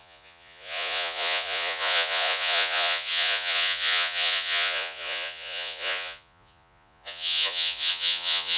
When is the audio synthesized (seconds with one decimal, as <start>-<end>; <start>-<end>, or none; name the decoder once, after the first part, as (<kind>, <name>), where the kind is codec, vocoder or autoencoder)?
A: 0.0-8.6 (vocoder, Vocos)